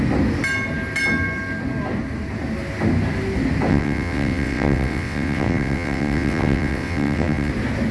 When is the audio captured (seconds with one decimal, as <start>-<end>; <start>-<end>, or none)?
0.0-3.7; 7.5-7.9